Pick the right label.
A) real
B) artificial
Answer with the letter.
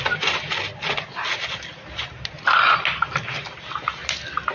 A